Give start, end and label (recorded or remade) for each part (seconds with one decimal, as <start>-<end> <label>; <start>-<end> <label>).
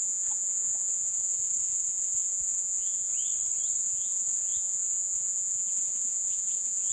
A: 0.0-3.1 remade; 3.1-3.8 recorded; 3.8-6.9 remade